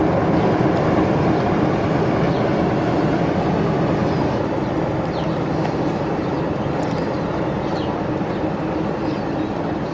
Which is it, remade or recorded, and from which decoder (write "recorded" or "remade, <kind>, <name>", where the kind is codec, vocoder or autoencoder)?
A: recorded